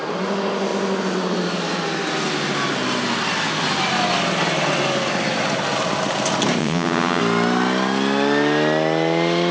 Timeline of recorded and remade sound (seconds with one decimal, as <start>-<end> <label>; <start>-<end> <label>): 0.0-6.6 recorded; 6.6-7.2 remade; 7.2-9.5 recorded